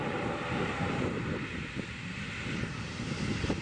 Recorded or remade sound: remade